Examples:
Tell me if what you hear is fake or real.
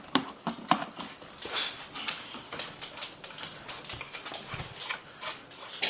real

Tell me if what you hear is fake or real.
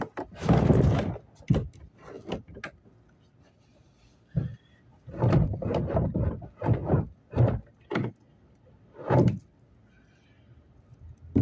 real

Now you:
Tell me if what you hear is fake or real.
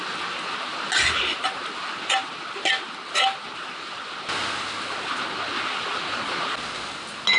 real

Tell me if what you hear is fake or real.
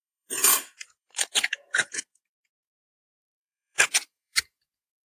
fake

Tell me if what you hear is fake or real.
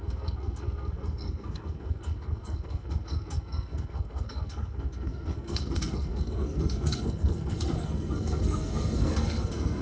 fake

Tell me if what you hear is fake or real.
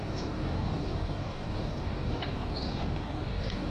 fake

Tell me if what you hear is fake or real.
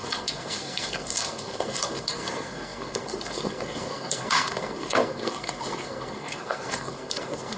fake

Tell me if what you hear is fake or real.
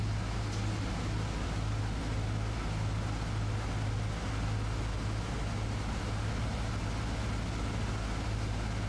real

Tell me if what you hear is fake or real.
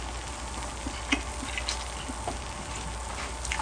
real